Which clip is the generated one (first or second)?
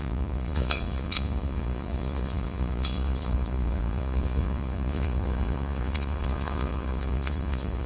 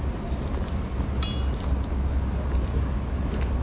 first